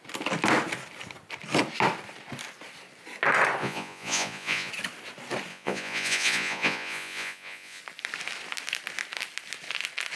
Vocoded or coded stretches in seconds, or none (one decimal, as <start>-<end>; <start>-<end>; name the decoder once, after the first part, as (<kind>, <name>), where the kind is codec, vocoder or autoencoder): 3.6-4.7 (vocoder, Vocos); 5.5-7.8